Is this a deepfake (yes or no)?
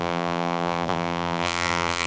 yes